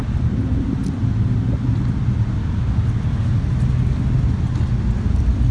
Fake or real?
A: real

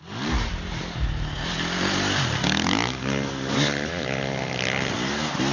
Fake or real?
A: real